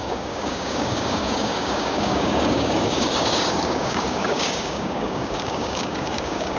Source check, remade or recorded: remade